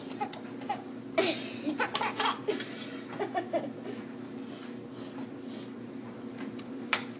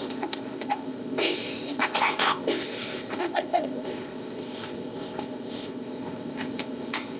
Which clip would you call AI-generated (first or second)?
second